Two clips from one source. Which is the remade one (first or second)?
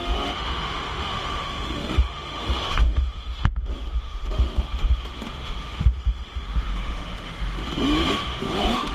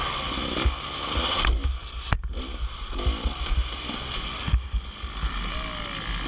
first